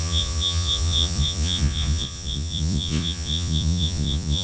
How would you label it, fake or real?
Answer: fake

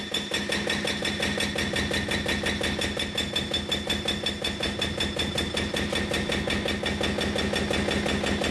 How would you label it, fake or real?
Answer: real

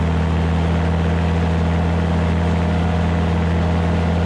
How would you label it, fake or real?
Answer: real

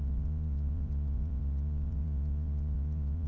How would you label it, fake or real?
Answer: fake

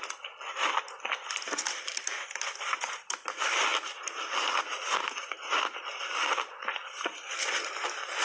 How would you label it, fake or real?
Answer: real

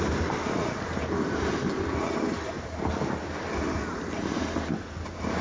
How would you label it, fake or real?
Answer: real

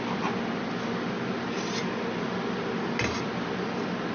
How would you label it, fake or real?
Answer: real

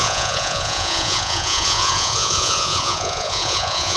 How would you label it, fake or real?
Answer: fake